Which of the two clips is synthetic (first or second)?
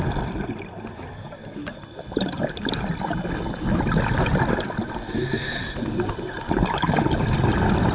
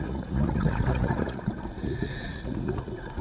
second